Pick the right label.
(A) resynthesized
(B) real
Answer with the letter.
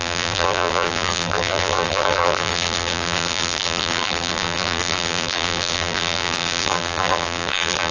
A